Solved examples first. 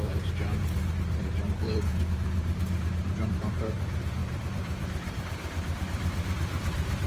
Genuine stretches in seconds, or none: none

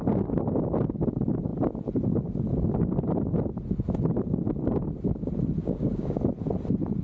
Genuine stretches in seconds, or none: 0.0-5.6; 6.2-7.0